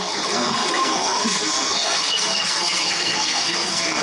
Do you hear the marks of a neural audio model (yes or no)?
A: yes